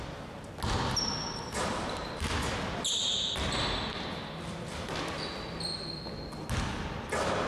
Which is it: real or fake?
real